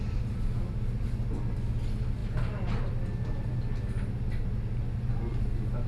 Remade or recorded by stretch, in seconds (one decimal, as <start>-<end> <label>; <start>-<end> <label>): 0.0-5.9 recorded